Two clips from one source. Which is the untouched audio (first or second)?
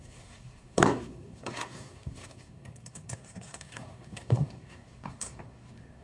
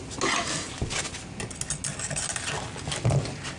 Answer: second